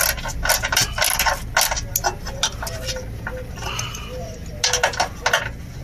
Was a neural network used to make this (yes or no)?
no